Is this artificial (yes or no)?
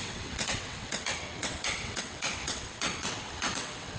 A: yes